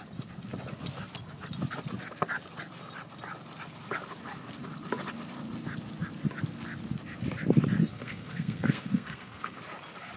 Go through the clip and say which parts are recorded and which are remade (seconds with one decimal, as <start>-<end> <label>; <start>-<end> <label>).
0.0-7.8 recorded; 7.8-9.6 remade; 9.6-10.2 recorded